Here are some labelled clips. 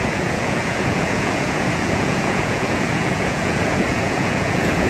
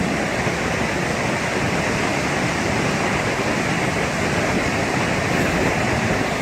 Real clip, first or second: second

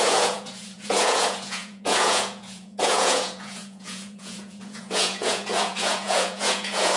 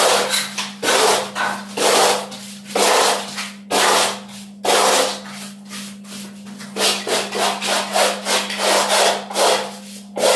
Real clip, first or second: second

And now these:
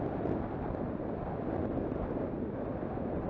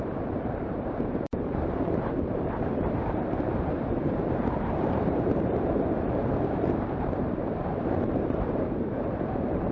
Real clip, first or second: first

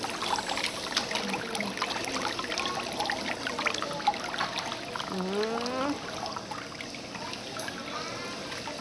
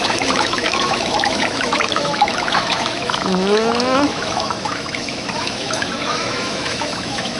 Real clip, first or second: first